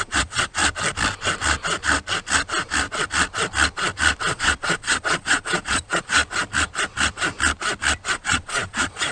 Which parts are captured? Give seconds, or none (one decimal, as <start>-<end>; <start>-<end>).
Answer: 0.6-4.2; 6.2-8.1